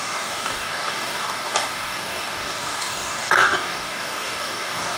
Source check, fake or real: fake